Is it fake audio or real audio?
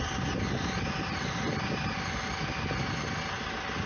real